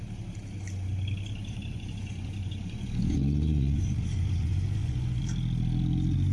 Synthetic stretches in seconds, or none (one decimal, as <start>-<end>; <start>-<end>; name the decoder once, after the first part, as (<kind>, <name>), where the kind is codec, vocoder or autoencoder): 1.4-5.2 (vocoder, Vocos)